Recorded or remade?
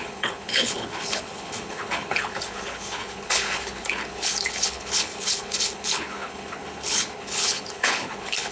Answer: remade